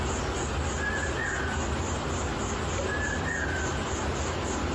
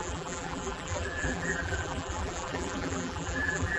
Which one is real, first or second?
first